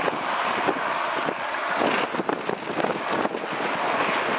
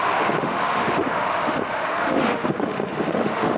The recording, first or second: first